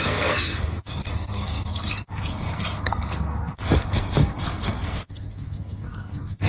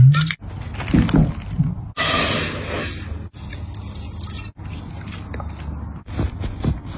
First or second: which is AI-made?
first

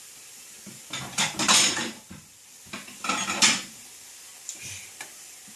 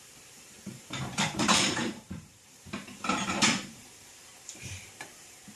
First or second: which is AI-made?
second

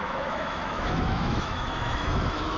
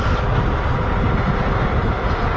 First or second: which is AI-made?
first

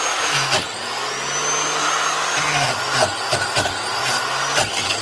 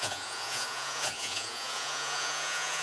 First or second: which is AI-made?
second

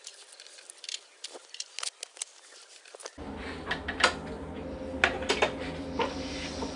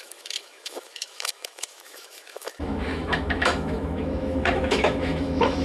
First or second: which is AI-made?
second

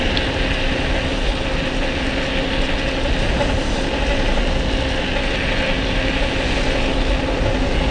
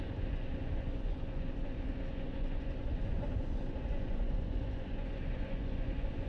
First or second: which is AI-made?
second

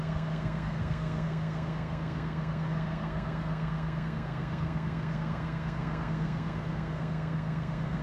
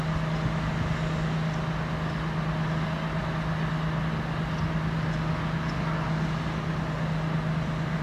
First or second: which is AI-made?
first